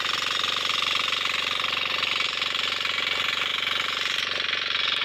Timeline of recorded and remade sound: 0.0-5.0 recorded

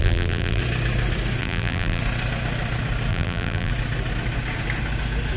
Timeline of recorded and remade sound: 0.0-0.6 remade; 0.6-1.4 recorded; 1.4-2.0 remade; 2.0-3.1 recorded; 3.1-3.7 remade; 3.7-5.4 recorded

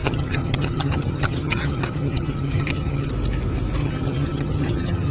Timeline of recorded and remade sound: 0.0-3.1 remade; 3.1-3.8 recorded; 3.8-5.1 remade

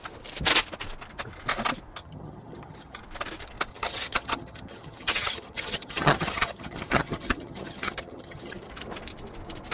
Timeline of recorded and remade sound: 0.0-2.0 recorded; 2.0-3.0 remade; 3.0-3.7 recorded; 3.7-8.7 remade; 8.7-9.7 recorded

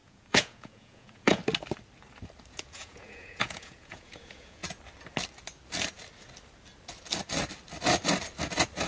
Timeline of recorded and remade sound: 0.0-1.4 remade; 1.4-2.5 recorded; 2.5-4.6 remade; 4.6-8.9 recorded

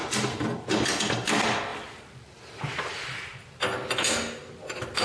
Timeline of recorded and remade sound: 0.0-5.0 recorded

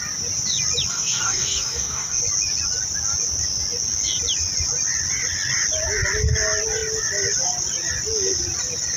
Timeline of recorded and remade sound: 0.0-0.9 recorded; 0.9-2.2 remade; 2.2-9.0 recorded